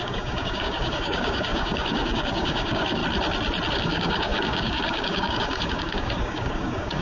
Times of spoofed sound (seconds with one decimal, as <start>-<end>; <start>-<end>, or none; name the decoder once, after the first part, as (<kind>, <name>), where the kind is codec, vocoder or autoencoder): 0.0-3.0 (codec, DAC); 3.7-7.0